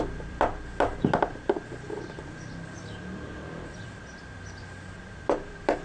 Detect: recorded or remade remade